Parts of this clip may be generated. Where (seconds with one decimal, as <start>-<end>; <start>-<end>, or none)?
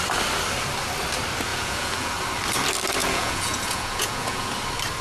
1.5-2.1; 3.0-4.5